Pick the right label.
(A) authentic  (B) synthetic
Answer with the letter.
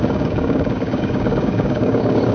B